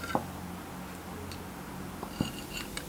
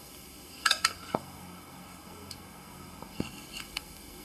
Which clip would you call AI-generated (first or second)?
second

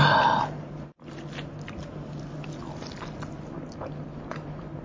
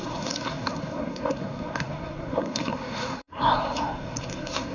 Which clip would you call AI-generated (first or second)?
second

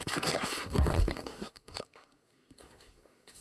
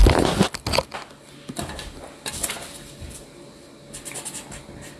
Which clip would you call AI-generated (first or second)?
first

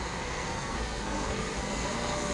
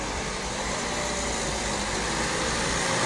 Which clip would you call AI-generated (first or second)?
first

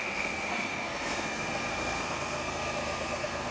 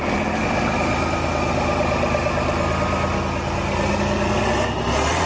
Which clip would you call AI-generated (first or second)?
first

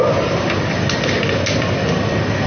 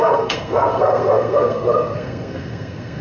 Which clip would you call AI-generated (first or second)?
second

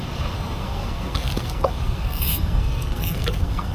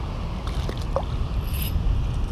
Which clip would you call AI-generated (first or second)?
first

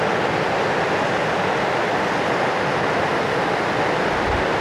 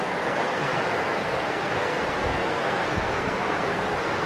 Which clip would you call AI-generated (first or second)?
second